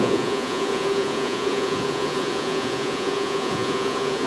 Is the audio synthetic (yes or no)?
yes